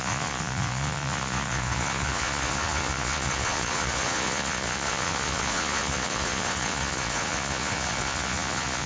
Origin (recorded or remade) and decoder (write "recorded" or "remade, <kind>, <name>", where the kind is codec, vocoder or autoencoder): remade, vocoder, Vocos